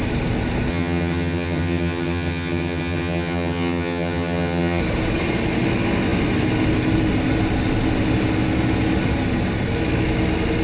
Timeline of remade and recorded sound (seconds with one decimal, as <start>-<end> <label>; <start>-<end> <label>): 0.0-0.7 recorded; 0.7-4.8 remade; 4.8-10.6 recorded